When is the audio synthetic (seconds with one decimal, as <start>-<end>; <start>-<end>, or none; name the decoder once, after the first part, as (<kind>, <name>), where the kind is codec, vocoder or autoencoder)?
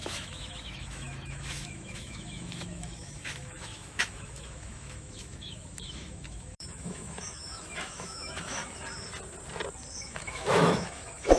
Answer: 0.0-8.6 (autoencoder, DAC-VAE); 10.0-11.4